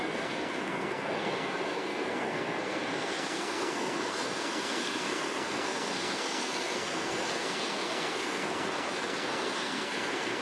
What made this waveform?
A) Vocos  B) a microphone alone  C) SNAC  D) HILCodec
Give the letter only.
C